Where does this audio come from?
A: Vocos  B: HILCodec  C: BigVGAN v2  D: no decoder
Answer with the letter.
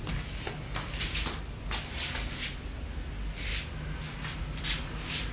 D